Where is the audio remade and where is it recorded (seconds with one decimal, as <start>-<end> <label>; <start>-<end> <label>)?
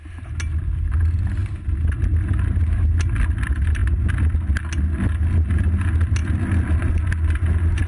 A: 0.0-7.9 recorded